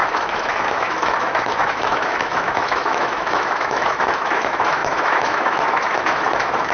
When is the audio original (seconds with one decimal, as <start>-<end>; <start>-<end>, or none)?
none